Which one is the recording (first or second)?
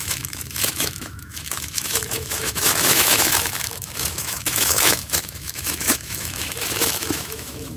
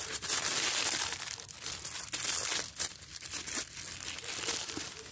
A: second